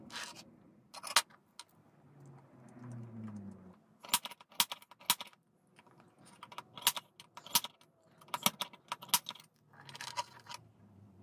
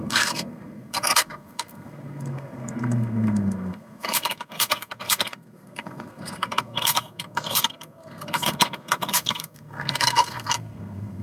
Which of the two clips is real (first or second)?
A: first